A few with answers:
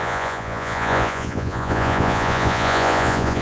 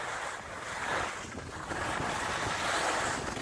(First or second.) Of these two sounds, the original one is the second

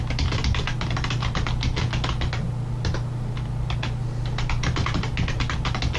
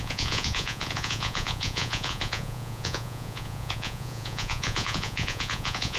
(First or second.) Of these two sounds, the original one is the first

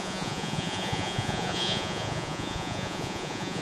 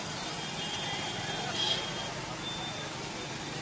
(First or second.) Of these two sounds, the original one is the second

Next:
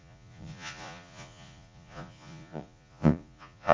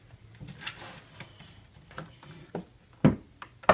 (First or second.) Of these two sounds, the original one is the second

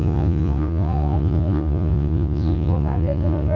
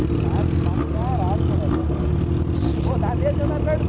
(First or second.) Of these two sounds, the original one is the second